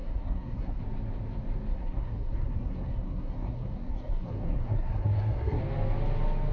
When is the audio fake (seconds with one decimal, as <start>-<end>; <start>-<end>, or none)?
0.0-0.8; 1.7-5.6